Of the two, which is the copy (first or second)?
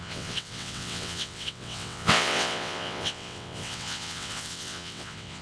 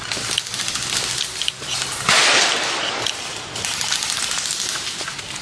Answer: first